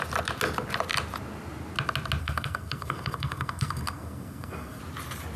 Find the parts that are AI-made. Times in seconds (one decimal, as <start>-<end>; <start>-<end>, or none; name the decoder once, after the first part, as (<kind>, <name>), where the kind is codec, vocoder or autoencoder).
2.2-4.8 (codec, SNAC)